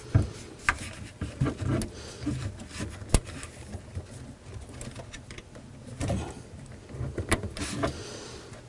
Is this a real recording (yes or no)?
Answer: yes